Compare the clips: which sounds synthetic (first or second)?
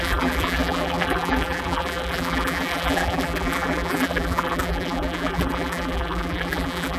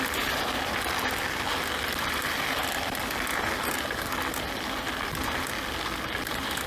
first